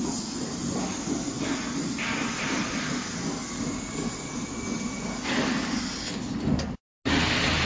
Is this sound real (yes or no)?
yes